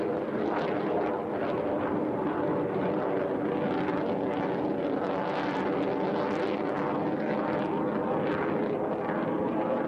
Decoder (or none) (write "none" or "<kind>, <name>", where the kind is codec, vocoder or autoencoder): none